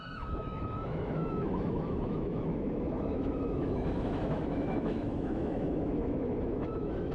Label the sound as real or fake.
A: fake